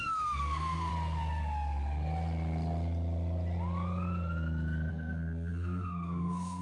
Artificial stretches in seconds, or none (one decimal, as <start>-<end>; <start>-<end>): 0.0-0.9; 4.9-6.6